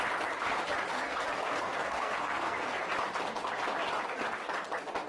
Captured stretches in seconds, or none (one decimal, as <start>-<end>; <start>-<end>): 0.0-0.9; 2.8-5.1